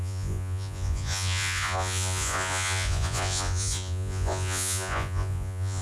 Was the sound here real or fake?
fake